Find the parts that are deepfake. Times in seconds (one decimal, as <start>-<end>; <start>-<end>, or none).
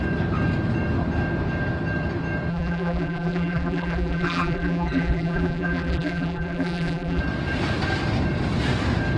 2.5-7.2